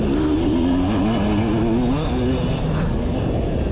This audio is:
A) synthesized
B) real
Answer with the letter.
B